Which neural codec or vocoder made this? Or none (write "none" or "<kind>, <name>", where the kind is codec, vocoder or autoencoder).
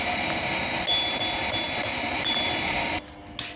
none